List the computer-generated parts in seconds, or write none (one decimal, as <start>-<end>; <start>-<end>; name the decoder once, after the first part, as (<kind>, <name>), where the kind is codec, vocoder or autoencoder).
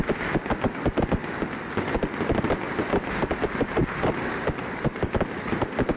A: 3.8-5.1 (vocoder, BigVGAN v2)